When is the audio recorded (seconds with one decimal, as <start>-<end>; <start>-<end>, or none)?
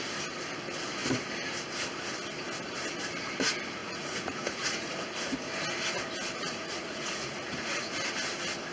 0.0-3.8; 5.3-6.4; 7.9-8.7